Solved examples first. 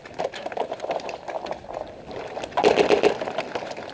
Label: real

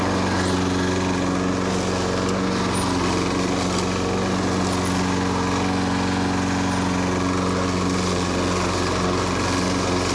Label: real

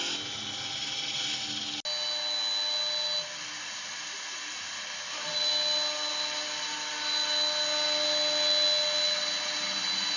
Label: real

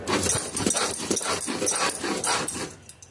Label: real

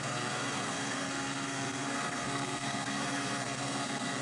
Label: fake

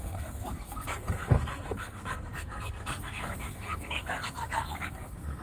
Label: fake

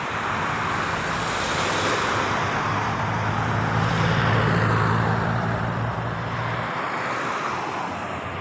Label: real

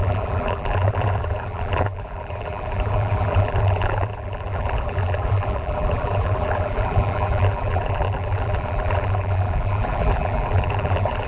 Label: fake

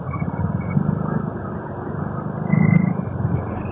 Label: real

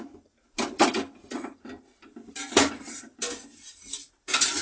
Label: fake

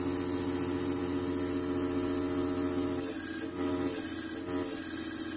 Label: real